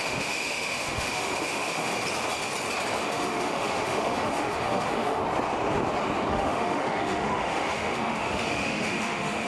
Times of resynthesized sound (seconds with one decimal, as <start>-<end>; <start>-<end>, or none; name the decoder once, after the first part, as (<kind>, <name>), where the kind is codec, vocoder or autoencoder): 0.0-1.9 (autoencoder, DAC-VAE); 3.0-5.2; 6.3-9.5

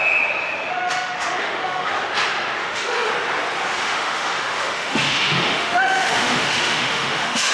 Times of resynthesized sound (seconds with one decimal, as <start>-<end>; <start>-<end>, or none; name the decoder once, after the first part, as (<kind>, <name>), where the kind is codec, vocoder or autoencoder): 0.7-1.9 (autoencoder, DAC-VAE); 2.6-3.1; 3.8-7.5

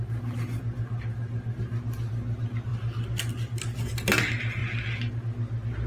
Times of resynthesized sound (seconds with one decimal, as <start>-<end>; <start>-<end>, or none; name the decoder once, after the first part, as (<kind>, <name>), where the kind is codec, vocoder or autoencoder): none